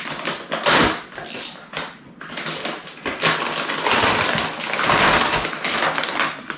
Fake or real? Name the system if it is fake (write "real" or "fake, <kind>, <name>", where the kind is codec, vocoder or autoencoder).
real